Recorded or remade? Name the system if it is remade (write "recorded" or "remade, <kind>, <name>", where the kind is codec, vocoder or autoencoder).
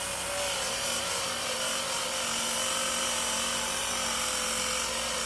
recorded